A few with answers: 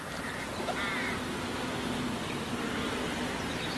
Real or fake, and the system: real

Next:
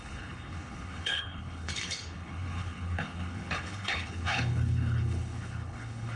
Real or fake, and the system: fake, codec, HILCodec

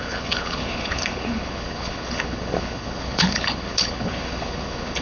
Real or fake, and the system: fake, codec, HILCodec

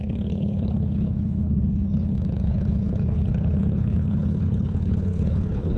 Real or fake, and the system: fake, codec, HILCodec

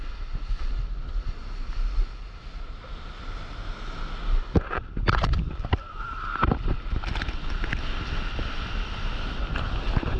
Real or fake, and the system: real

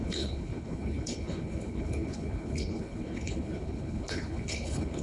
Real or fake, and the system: fake, codec, HILCodec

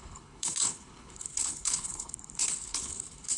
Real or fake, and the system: fake, codec, HILCodec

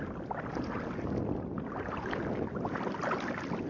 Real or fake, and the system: real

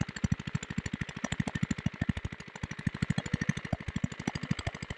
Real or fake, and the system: real